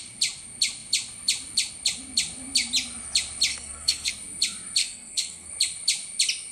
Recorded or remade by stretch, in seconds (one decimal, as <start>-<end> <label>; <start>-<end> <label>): 0.0-3.5 recorded; 3.5-4.1 remade; 4.1-4.8 recorded; 4.8-5.5 remade; 5.5-6.5 recorded

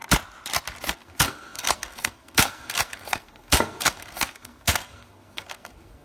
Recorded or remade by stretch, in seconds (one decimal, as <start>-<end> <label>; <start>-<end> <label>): 0.0-0.9 recorded; 0.9-6.0 remade

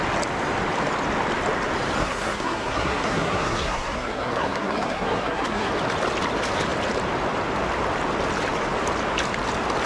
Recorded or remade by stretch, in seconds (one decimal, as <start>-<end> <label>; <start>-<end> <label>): 0.0-2.0 recorded; 2.0-5.7 remade; 5.7-9.9 recorded

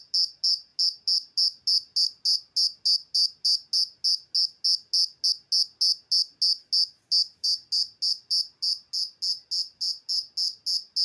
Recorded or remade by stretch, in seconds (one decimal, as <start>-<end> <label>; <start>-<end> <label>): 0.0-11.0 recorded